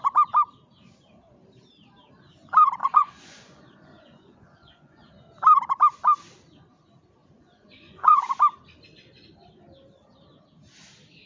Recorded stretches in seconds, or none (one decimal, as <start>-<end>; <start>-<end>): 0.0-2.8; 5.1-7.2; 8.3-11.3